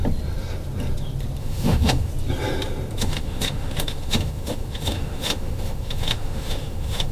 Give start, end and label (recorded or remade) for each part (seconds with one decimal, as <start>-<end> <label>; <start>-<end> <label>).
0.0-1.4 recorded; 1.4-2.1 remade; 2.1-3.0 recorded; 3.0-7.1 remade